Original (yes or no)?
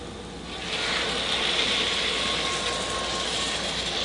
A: yes